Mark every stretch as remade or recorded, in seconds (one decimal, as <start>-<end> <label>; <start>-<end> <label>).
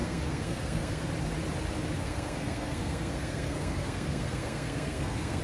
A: 0.0-1.1 remade; 1.1-2.0 recorded; 2.0-5.4 remade